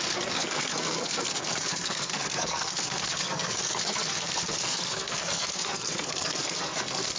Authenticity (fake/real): fake